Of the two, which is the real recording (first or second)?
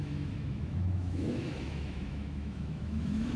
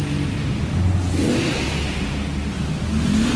second